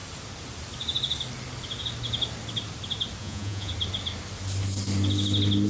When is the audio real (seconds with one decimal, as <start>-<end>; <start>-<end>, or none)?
0.0-3.2; 3.7-5.7